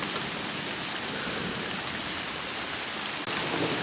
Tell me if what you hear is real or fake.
real